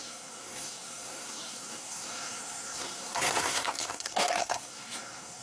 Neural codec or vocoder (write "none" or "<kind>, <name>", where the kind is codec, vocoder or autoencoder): codec, SNAC